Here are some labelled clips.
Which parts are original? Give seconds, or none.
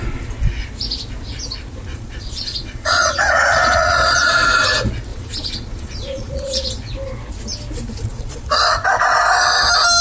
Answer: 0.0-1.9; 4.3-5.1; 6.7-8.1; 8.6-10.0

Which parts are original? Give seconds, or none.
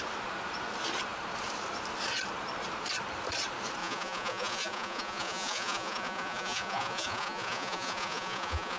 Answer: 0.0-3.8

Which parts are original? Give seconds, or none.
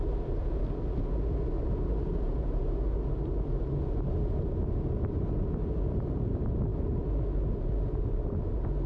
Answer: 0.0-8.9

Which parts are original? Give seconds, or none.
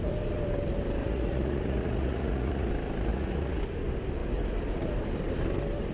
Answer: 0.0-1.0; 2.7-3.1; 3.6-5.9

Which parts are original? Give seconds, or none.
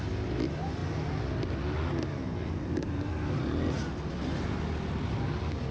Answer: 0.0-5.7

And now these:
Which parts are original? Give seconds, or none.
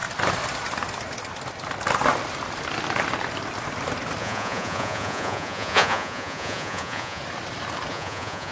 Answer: 0.0-4.2; 7.2-7.9